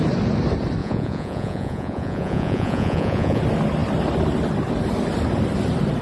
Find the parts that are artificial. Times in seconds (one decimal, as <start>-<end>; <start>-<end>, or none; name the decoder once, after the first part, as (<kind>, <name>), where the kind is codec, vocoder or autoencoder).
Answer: 0.8-3.4 (vocoder, Vocos)